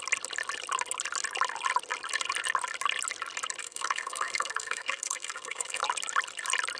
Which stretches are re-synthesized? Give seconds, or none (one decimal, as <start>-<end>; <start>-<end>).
3.6-5.8